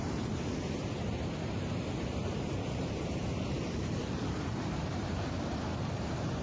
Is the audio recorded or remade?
remade